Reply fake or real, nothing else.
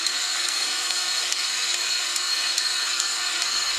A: fake